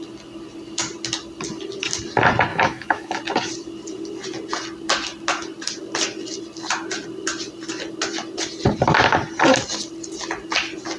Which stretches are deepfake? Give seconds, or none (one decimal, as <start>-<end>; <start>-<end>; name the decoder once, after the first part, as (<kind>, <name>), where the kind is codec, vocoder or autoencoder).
2.5-3.2 (autoencoder, DAC-VAE)

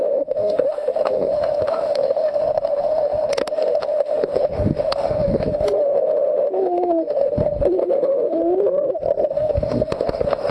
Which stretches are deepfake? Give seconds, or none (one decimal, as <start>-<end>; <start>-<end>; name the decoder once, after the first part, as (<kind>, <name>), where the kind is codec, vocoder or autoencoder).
0.0-8.4 (autoencoder, DAC-VAE); 9.3-10.5

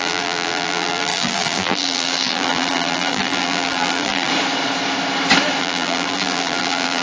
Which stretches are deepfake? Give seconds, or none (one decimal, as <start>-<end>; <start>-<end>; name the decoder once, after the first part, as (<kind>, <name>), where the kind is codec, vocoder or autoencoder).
0.0-4.3 (vocoder, BigVGAN v2); 5.6-7.0